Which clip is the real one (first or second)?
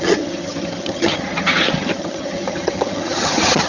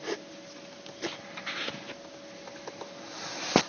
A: second